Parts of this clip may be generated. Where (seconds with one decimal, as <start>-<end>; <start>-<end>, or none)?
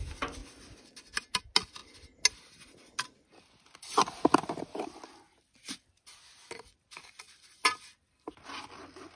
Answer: none